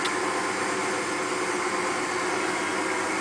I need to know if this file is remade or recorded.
recorded